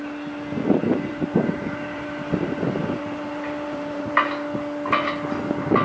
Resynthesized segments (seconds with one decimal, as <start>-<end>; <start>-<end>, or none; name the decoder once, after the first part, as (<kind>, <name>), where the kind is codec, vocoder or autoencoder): 0.8-4.3 (vocoder, BigVGAN v2)